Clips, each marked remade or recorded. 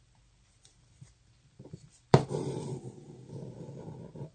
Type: remade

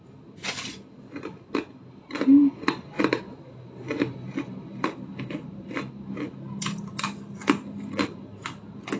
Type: recorded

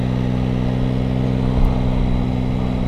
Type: recorded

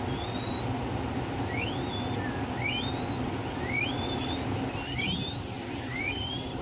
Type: recorded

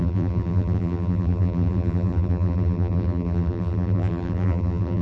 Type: remade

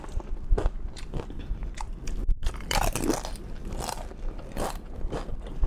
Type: remade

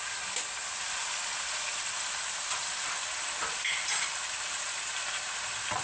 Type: remade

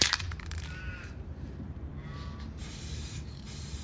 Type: remade